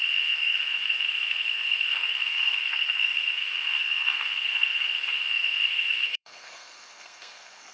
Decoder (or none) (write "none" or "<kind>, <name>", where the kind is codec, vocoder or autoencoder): codec, SNAC